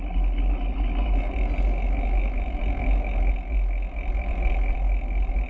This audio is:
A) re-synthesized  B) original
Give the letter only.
B